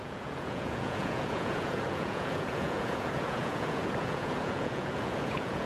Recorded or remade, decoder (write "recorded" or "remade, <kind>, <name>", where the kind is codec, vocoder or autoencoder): remade, vocoder, Vocos